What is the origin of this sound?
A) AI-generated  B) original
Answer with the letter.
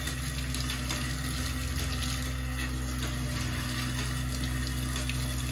B